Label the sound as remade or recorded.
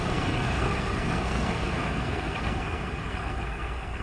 remade